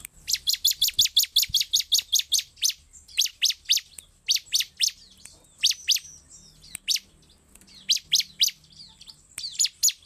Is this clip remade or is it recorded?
recorded